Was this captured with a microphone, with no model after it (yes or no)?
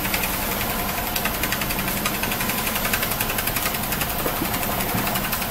yes